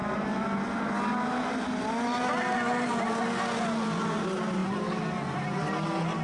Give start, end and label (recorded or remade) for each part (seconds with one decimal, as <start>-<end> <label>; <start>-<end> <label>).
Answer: 0.0-6.2 recorded